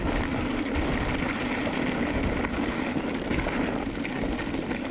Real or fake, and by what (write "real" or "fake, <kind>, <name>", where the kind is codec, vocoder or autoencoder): real